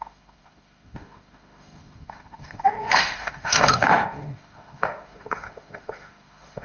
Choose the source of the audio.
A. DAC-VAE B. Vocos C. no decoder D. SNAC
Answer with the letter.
A